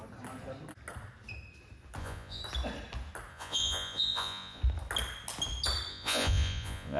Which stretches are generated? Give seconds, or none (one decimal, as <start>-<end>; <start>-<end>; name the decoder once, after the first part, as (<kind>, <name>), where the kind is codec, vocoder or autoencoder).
2.0-2.4 (vocoder, Vocos); 3.3-4.6; 5.9-7.0